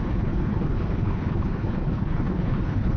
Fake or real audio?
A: fake